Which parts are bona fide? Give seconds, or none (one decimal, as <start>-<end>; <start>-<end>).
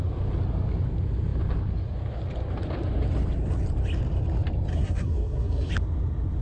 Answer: 0.0-4.7; 5.7-6.4